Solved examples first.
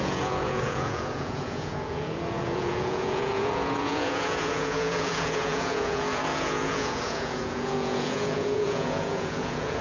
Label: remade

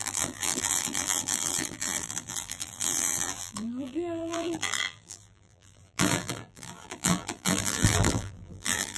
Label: remade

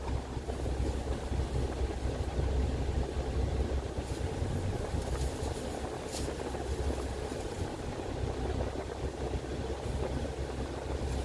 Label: recorded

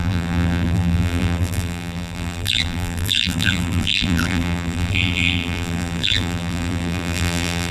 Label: remade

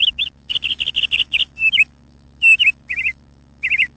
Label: remade